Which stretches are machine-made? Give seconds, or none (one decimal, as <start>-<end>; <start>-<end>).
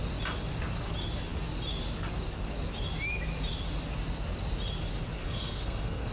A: 5.2-6.1